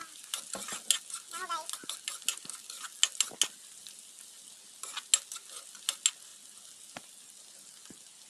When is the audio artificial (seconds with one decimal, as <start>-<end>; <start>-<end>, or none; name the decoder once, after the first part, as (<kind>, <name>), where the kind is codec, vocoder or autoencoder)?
none